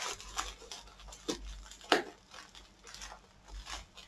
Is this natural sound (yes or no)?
yes